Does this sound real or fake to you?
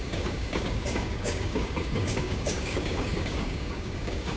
fake